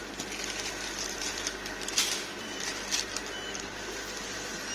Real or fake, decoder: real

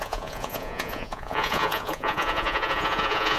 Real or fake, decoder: fake, vocoder, Vocos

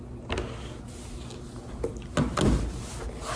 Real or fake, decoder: real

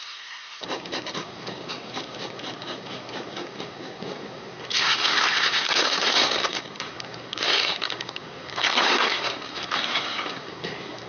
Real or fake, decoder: fake, codec, SNAC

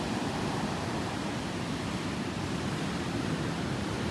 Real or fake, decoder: fake, vocoder, BigVGAN v2